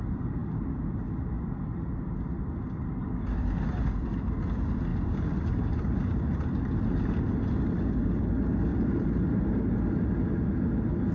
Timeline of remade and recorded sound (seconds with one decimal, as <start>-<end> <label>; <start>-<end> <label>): 0.0-4.9 recorded; 4.9-7.8 remade; 7.8-8.7 recorded; 8.7-9.6 remade; 9.6-11.1 recorded